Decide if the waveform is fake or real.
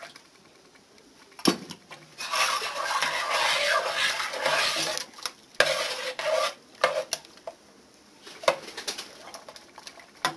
real